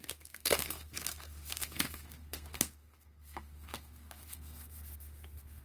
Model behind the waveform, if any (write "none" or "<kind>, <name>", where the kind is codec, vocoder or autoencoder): codec, SNAC